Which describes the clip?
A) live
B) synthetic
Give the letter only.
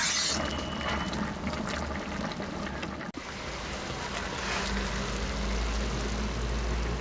A